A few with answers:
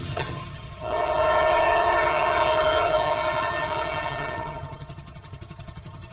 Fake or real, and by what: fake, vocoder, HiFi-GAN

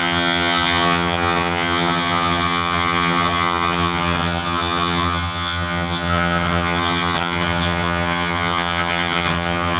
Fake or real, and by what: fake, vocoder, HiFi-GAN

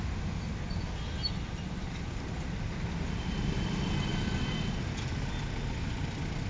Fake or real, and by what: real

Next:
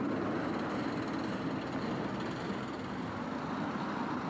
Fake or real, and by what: real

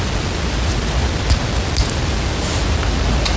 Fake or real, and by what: real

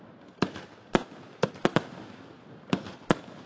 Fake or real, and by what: real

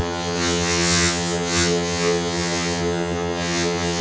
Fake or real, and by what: fake, vocoder, HiFi-GAN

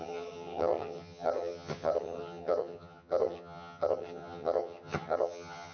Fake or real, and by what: fake, vocoder, HiFi-GAN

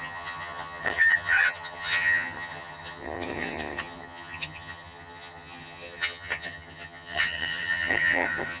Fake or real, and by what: fake, vocoder, HiFi-GAN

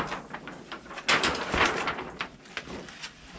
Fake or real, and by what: real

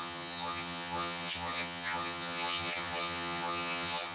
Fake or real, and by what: fake, vocoder, HiFi-GAN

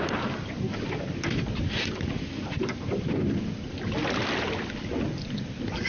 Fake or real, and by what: real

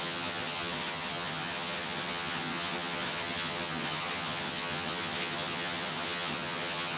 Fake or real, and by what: fake, vocoder, HiFi-GAN